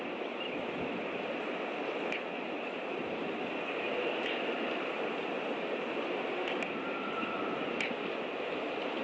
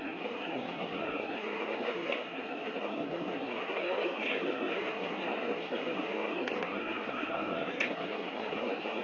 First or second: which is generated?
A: second